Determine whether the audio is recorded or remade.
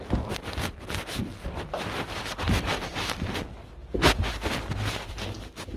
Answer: recorded